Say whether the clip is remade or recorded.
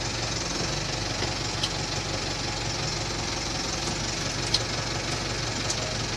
recorded